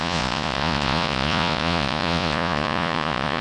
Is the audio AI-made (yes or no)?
yes